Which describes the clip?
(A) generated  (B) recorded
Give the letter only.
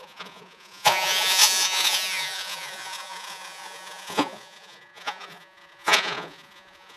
A